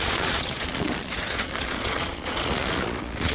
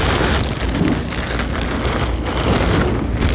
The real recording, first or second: second